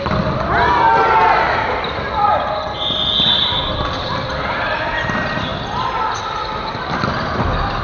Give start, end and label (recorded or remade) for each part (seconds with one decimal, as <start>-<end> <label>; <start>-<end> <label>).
0.0-7.8 recorded